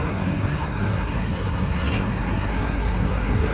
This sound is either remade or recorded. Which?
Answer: remade